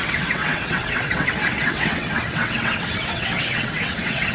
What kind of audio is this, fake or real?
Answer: fake